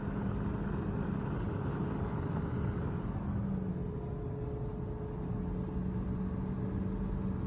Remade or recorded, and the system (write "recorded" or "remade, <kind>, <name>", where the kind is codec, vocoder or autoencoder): recorded